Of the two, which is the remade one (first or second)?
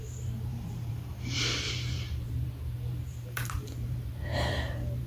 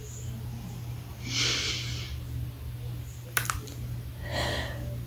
first